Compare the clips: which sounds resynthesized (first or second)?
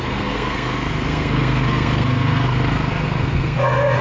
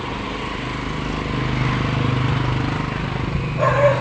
first